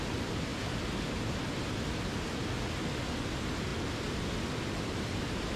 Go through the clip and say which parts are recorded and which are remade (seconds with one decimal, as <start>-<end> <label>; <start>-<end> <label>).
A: 0.0-0.5 recorded; 0.5-1.1 remade; 1.1-5.6 recorded